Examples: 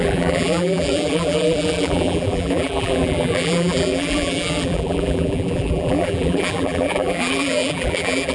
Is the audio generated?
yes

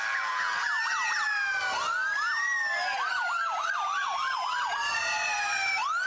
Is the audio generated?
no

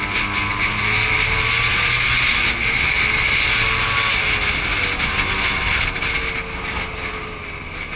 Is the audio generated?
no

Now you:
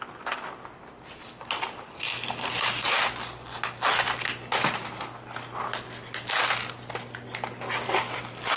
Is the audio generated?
no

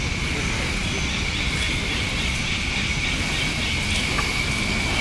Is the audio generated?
no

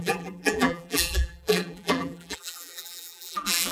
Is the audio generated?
yes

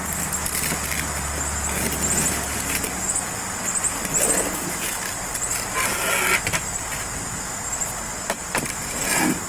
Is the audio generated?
no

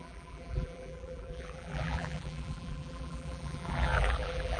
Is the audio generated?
yes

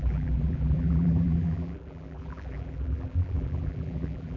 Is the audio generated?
yes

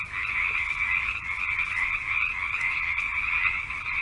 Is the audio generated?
no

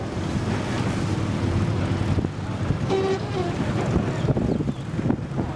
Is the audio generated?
no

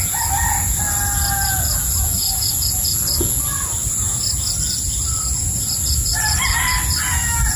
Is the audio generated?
no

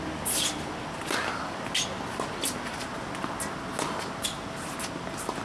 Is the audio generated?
no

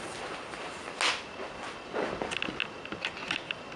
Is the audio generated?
no